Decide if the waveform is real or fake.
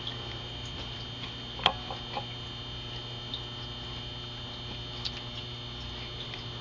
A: real